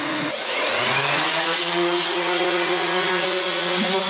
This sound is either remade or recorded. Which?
remade